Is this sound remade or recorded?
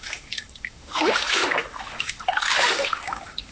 remade